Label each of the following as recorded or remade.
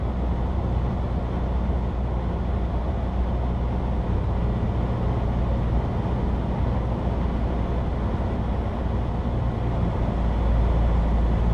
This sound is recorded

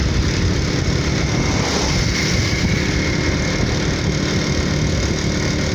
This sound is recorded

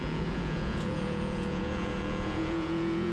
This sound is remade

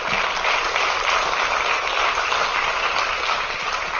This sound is recorded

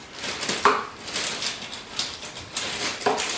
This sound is recorded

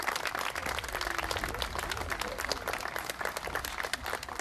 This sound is recorded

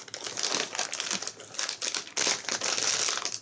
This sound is recorded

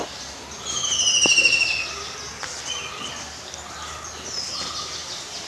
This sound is recorded